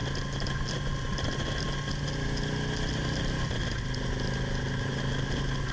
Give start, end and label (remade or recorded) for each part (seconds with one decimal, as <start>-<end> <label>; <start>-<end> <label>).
0.0-5.7 recorded